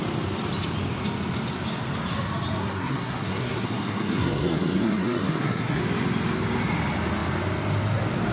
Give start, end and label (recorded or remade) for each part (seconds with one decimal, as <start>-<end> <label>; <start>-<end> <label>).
0.0-2.6 recorded; 2.6-5.8 remade; 5.8-8.3 recorded